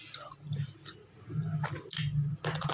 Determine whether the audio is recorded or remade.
recorded